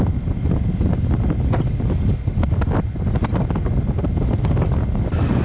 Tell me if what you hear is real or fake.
real